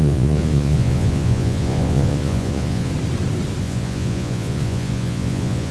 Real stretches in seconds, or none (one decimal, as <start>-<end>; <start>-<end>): 2.9-3.6